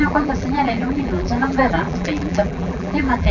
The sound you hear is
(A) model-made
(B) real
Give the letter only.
A